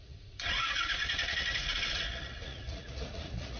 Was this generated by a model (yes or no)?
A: yes